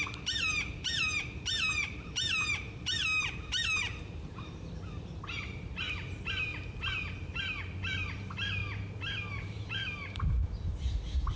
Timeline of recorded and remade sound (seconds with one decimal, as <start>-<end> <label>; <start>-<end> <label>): 0.0-3.0 remade; 3.0-3.7 recorded; 3.7-6.5 remade; 6.5-7.8 recorded; 7.8-8.6 remade; 8.6-9.3 recorded; 9.3-11.4 remade